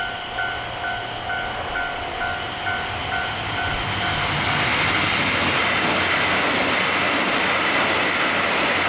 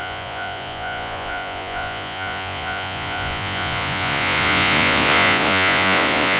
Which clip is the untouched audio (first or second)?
first